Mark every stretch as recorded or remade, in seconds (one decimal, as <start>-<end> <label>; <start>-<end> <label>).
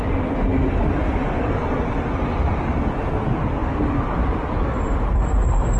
0.0-5.8 recorded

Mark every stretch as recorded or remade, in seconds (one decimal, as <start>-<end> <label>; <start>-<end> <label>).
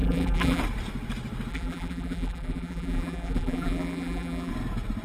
0.0-0.6 remade; 0.6-1.5 recorded; 1.5-4.5 remade; 4.5-5.0 recorded